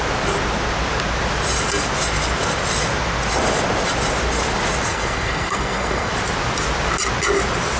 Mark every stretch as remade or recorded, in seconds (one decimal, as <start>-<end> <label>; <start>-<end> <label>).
0.0-4.9 recorded; 4.9-6.1 remade; 6.1-7.8 recorded